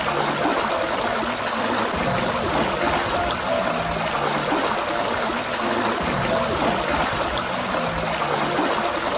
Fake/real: real